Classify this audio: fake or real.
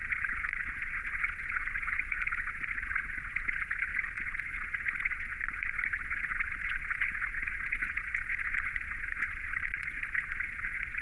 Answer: fake